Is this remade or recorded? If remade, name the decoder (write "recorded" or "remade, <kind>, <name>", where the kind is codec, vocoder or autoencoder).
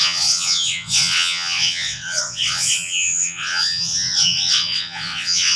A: remade, vocoder, WaveNeXt